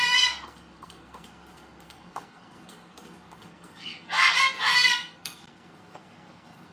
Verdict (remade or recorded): remade